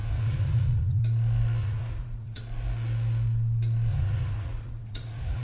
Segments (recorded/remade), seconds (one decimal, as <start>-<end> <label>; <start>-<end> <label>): 0.0-1.0 remade; 1.0-1.6 recorded; 1.6-2.4 remade; 2.4-3.9 recorded; 3.9-5.4 remade